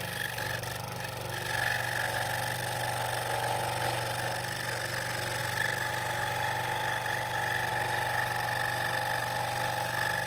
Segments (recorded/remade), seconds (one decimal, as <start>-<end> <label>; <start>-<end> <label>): 0.0-10.3 recorded